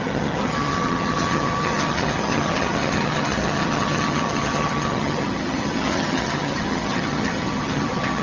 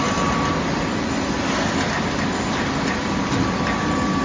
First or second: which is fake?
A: first